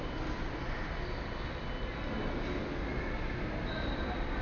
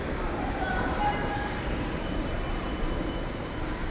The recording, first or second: first